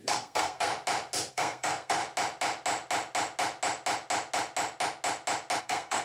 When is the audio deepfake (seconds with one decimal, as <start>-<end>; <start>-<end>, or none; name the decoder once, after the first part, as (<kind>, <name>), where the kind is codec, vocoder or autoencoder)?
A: 0.0-0.7 (codec, SNAC); 1.3-2.0; 5.6-6.0

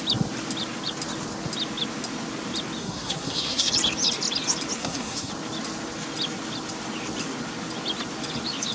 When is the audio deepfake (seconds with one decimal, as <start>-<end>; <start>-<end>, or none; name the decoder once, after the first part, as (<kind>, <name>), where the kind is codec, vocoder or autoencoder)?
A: 2.8-3.7 (codec, SNAC); 4.8-5.3

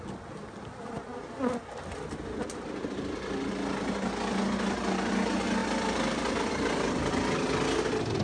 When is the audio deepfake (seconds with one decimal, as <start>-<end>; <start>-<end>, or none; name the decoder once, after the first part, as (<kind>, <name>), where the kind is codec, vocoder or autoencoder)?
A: none

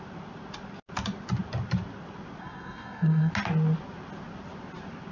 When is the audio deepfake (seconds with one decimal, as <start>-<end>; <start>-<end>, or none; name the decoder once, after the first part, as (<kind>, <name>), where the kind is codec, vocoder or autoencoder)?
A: 2.4-3.3 (codec, SNAC)

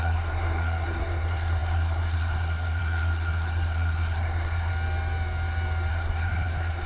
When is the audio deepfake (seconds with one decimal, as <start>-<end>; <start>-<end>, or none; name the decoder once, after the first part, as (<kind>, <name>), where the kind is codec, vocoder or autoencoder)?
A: 0.0-4.7 (codec, SNAC); 5.9-6.9

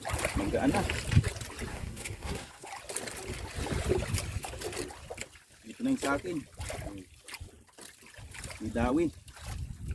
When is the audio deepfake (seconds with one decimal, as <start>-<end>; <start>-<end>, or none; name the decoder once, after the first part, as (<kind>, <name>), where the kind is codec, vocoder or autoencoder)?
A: 1.7-2.7 (codec, SNAC)

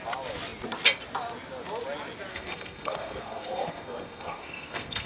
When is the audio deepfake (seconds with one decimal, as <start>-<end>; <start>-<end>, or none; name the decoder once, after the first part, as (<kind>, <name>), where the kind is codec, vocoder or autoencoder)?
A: 2.3-5.1 (codec, SNAC)